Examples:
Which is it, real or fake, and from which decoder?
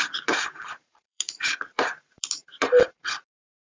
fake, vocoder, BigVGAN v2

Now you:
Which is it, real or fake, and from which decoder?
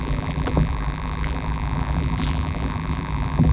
fake, vocoder, BigVGAN v2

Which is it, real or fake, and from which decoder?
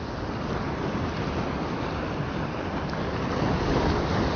real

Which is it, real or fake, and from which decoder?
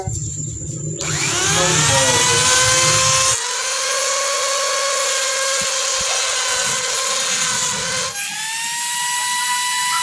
real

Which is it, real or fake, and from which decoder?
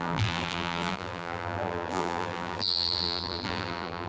fake, vocoder, BigVGAN v2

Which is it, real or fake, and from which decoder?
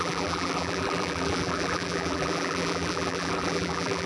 fake, vocoder, BigVGAN v2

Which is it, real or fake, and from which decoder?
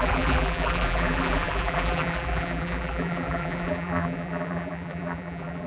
fake, vocoder, BigVGAN v2